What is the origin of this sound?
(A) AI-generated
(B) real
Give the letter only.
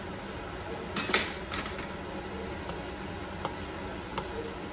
B